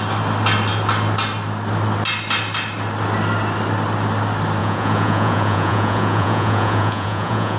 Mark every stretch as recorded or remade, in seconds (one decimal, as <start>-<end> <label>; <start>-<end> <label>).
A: 0.0-4.6 recorded; 4.6-7.6 remade